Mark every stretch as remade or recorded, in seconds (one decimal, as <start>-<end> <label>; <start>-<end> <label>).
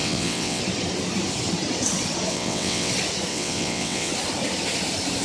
0.0-0.6 remade; 0.6-2.3 recorded; 2.3-2.9 remade; 2.9-3.3 recorded; 3.3-4.1 remade; 4.1-5.2 recorded